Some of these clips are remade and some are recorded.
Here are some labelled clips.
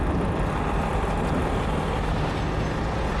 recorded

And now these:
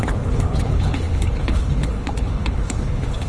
remade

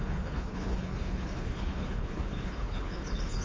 remade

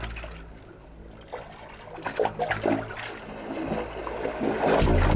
recorded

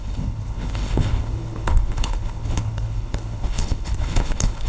remade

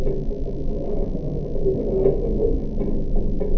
recorded